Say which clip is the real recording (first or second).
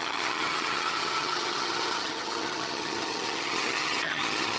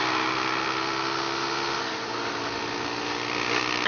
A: second